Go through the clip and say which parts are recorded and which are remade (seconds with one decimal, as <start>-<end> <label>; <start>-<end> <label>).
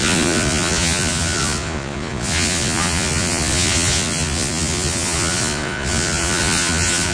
0.0-7.1 remade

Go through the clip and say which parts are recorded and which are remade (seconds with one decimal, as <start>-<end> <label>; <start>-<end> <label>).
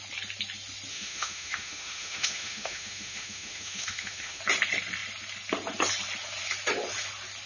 0.0-0.9 recorded; 0.9-4.4 remade; 4.4-7.5 recorded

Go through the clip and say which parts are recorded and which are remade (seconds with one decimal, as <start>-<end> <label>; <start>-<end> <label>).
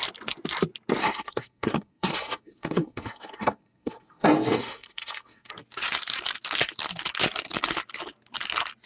0.0-1.0 recorded; 1.0-5.5 remade; 5.5-8.9 recorded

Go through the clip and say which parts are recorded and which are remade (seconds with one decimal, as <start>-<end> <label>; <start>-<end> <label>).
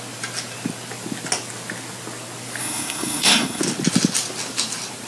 0.0-2.6 recorded; 2.6-3.6 remade; 3.6-5.1 recorded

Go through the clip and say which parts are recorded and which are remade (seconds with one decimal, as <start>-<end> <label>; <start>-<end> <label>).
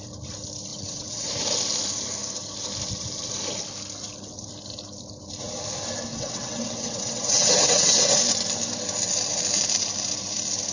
0.0-0.7 recorded; 0.7-1.3 remade; 1.3-6.1 recorded; 6.1-8.2 remade; 8.2-10.7 recorded